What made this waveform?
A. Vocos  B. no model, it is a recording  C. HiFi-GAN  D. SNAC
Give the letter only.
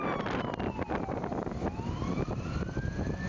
B